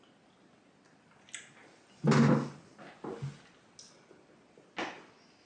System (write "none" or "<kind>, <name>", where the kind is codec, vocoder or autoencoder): none